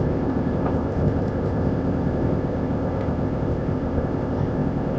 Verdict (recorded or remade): remade